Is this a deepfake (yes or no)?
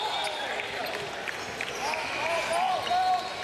no